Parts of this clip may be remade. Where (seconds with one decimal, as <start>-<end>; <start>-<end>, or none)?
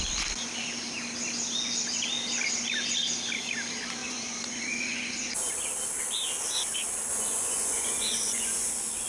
4.0-5.5; 7.1-8.7